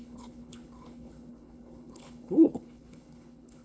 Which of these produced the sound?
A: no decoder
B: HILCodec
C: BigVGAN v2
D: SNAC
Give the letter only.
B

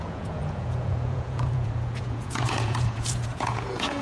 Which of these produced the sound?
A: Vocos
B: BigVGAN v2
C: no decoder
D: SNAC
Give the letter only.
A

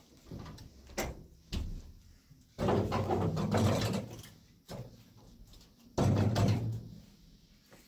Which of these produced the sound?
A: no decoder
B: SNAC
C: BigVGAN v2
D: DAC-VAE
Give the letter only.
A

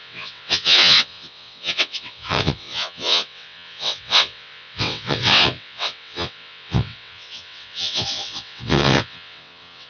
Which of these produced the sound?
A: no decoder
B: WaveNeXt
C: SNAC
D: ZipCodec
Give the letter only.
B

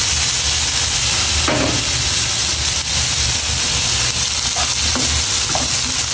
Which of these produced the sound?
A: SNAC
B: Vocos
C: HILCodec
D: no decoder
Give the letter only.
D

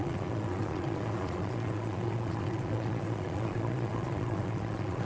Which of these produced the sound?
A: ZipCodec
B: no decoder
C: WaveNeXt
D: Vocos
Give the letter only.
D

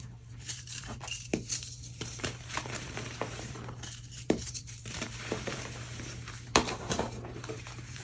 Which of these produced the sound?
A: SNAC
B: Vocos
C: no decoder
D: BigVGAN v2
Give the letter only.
D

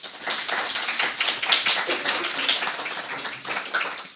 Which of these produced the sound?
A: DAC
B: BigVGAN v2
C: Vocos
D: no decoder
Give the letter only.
D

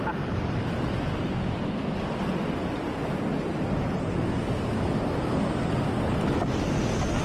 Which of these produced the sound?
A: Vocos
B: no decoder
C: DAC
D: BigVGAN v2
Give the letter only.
B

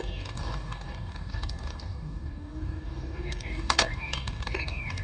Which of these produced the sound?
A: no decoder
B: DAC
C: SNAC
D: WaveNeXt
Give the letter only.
B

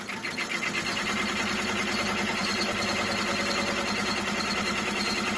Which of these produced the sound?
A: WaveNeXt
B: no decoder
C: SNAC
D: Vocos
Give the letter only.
B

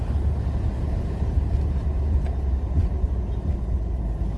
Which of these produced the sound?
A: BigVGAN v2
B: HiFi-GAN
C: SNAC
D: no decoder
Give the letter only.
A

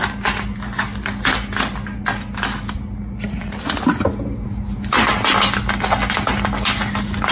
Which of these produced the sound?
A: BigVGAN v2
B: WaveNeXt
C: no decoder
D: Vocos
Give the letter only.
C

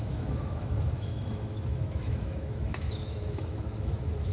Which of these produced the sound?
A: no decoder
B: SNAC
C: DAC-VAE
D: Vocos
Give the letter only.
C